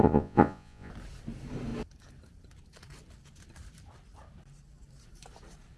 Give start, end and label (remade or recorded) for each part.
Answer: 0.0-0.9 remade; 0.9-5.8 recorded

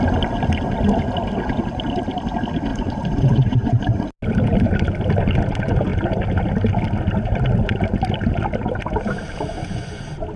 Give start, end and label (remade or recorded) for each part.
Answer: 0.0-2.7 recorded; 2.7-3.8 remade; 3.8-9.5 recorded; 9.5-10.0 remade; 10.0-10.4 recorded

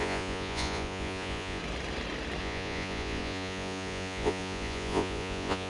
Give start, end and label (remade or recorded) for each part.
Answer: 0.0-1.6 remade; 1.6-2.4 recorded; 2.4-5.7 remade